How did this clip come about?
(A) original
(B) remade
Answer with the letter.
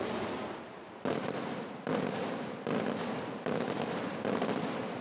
A